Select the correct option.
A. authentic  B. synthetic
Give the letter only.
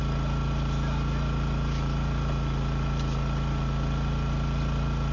A